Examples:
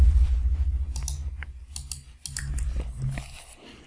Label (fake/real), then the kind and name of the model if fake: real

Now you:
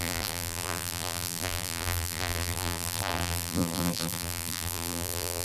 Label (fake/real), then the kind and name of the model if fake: fake, vocoder, BigVGAN v2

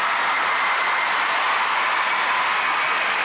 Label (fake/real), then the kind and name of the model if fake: fake, vocoder, BigVGAN v2